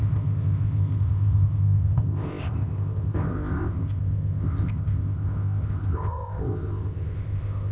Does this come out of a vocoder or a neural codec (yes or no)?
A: yes